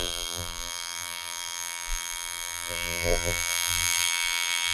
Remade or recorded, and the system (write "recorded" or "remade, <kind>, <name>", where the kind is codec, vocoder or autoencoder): remade, vocoder, BigVGAN v2